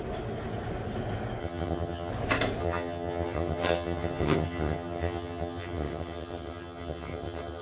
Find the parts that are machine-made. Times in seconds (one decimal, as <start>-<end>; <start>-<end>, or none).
1.4-2.1; 2.6-7.6

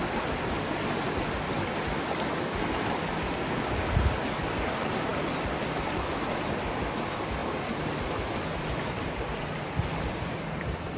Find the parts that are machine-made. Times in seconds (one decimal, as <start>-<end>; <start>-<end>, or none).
none